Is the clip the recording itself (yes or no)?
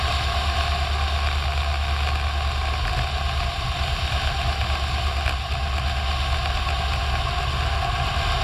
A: yes